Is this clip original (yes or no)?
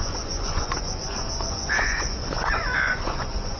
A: no